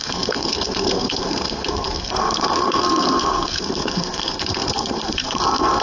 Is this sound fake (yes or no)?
yes